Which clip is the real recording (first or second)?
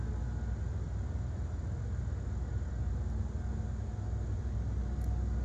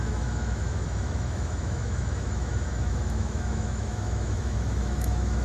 first